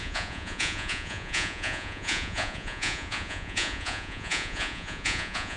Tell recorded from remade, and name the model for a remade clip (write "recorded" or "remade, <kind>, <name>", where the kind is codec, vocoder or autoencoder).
remade, vocoder, Vocos